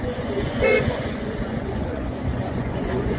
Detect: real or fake fake